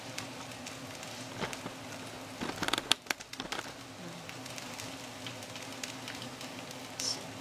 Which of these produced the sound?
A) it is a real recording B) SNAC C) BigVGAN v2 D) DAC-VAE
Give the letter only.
A